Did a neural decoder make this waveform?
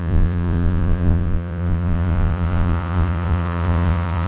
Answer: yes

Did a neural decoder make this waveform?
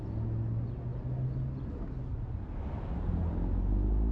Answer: no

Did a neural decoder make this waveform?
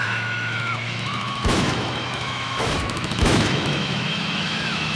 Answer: yes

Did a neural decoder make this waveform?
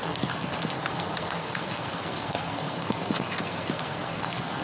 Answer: yes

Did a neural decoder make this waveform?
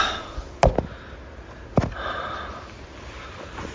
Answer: no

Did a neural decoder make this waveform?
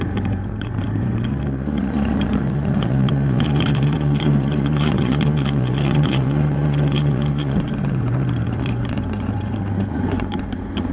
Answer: yes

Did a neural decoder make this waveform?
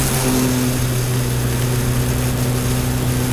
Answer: no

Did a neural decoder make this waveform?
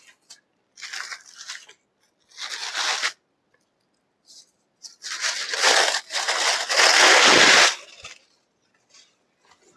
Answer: no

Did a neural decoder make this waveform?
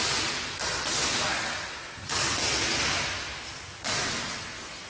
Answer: no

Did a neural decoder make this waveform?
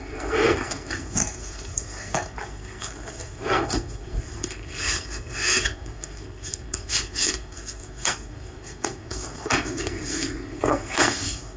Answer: yes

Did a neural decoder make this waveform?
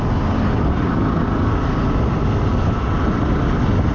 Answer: no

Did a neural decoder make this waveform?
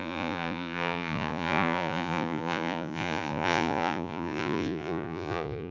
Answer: yes